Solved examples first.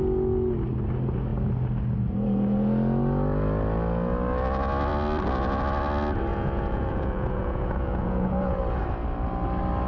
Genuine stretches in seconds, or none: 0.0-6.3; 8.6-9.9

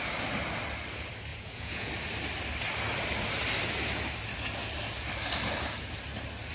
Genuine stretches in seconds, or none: 0.0-1.3; 1.9-6.5

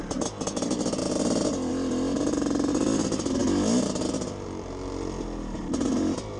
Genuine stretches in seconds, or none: 0.0-6.4

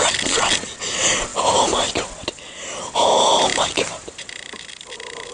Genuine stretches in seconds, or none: 0.0-3.5; 4.7-5.3